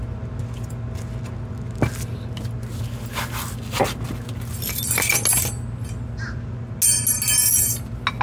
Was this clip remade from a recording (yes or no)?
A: no